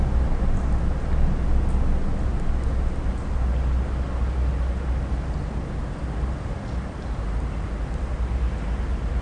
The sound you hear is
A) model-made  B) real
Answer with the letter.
B